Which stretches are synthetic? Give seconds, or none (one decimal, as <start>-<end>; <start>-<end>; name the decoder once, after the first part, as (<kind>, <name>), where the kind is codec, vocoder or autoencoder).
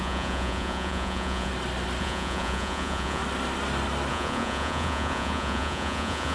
0.0-1.5 (vocoder, Vocos); 2.0-3.2; 4.1-6.3